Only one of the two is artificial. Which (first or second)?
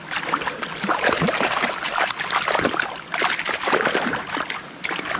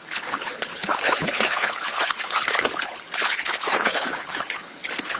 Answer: second